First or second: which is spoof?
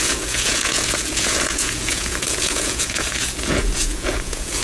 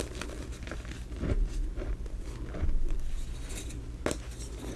first